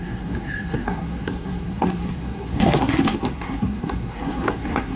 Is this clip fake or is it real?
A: fake